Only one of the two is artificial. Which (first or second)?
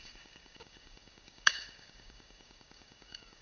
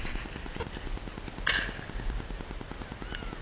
first